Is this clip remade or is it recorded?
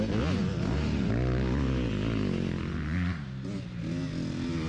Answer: recorded